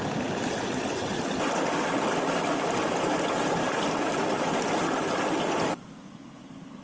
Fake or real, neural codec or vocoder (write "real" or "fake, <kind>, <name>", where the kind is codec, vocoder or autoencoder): real